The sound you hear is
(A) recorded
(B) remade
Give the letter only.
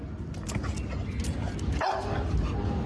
A